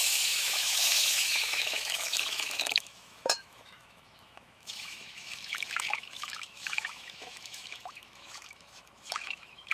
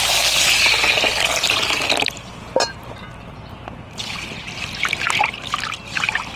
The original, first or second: second